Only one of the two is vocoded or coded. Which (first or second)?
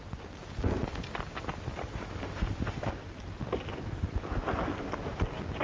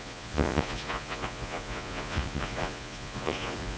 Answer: second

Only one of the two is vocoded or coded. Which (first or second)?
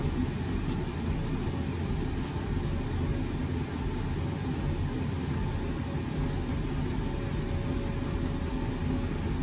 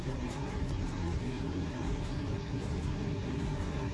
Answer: second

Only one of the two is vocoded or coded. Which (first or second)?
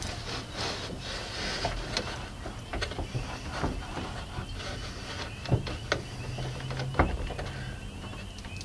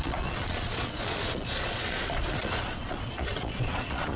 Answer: second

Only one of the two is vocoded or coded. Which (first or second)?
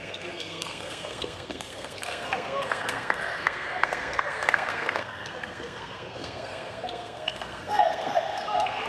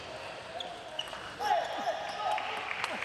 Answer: first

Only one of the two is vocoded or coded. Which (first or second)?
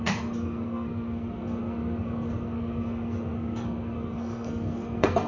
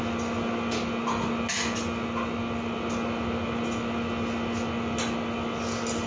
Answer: first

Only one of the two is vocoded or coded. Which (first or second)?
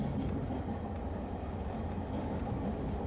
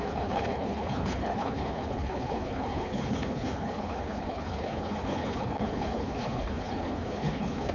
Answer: second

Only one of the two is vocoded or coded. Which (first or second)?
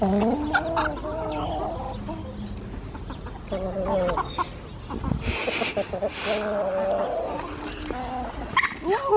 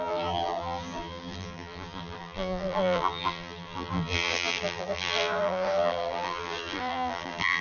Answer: second